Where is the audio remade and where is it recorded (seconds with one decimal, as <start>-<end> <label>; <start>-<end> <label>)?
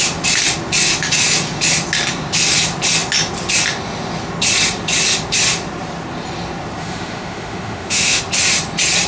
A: 0.0-6.8 recorded; 6.8-8.2 remade; 8.2-9.1 recorded